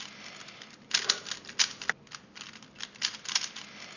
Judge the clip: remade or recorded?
recorded